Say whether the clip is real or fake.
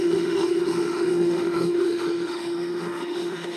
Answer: fake